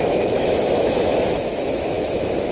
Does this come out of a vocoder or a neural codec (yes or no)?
yes